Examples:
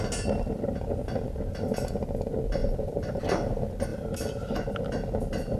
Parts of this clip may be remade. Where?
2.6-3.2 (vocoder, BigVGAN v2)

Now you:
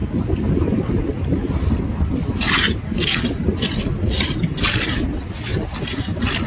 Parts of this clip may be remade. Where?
0.0-1.7 (vocoder, BigVGAN v2)